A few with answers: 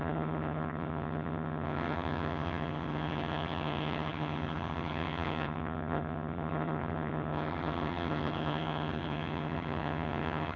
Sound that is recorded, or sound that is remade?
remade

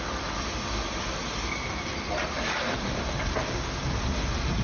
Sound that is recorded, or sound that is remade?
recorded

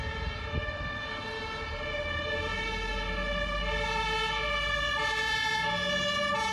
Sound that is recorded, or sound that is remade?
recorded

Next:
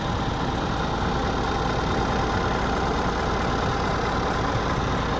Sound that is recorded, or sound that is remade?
recorded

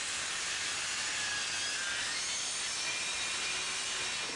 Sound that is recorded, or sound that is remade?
recorded